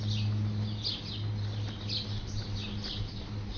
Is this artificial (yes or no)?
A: no